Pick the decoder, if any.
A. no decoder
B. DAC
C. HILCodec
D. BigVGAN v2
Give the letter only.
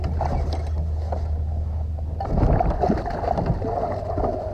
A